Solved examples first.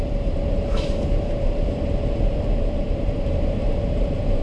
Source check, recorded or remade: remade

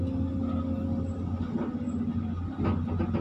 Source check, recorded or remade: recorded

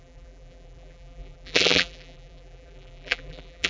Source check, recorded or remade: remade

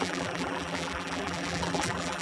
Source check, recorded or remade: remade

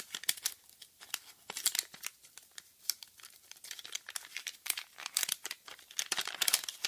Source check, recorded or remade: recorded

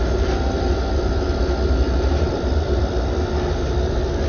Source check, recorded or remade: remade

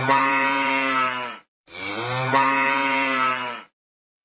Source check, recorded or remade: remade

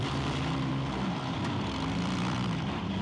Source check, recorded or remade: remade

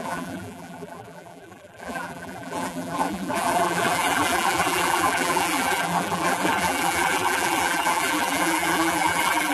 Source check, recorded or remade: remade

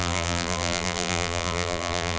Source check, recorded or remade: remade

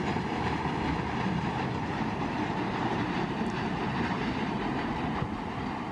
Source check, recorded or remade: remade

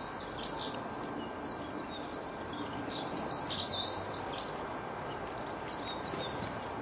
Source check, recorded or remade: recorded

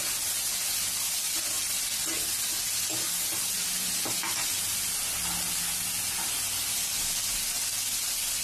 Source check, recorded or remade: recorded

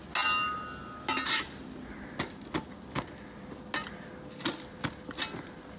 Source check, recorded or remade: recorded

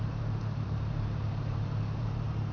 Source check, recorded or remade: remade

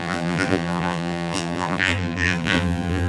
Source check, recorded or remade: remade